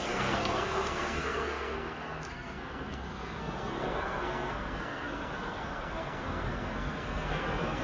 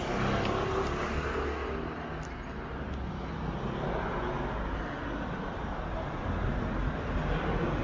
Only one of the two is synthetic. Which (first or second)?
first